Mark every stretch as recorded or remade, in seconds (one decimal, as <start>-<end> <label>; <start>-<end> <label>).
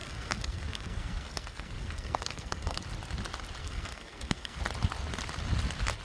0.0-2.8 remade; 2.8-3.6 recorded; 3.6-4.6 remade; 4.6-6.0 recorded